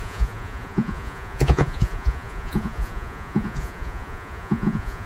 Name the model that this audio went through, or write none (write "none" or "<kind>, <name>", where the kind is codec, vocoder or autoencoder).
vocoder, Vocos